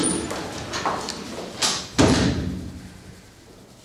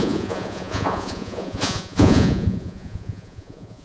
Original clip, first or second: first